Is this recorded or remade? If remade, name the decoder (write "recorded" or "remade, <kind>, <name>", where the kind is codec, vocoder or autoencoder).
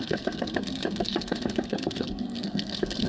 remade, codec, SNAC